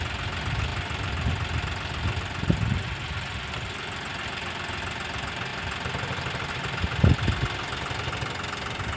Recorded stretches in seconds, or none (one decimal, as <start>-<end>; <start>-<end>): 0.0-9.0

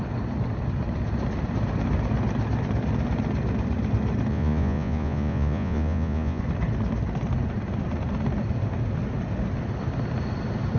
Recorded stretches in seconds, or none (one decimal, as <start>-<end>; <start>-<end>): 0.0-4.3; 6.4-10.8

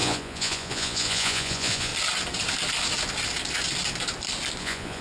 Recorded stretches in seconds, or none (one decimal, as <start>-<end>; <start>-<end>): 1.9-4.6